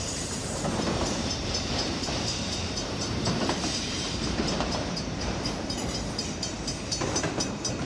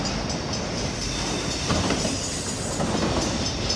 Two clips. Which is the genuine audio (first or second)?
second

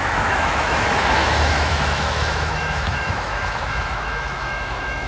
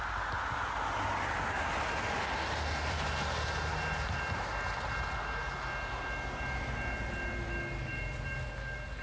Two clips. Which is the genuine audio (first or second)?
second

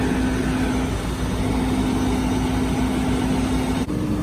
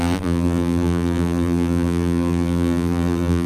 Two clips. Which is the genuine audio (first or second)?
first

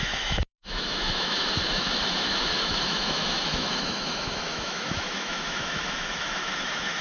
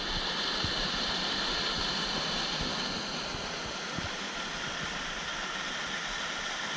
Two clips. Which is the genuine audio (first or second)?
second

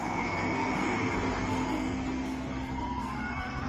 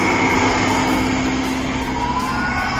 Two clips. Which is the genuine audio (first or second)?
second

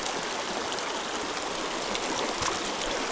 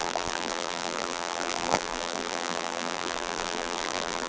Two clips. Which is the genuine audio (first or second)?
first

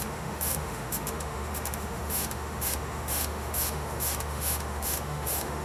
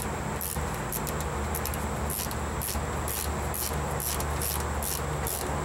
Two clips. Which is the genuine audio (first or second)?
second